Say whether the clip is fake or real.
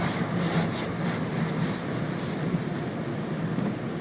real